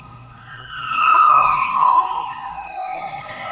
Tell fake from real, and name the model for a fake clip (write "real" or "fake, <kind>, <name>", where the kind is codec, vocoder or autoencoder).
fake, codec, SNAC